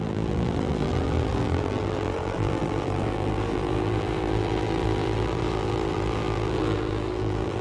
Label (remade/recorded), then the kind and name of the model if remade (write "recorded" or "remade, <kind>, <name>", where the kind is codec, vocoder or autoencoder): remade, vocoder, BigVGAN v2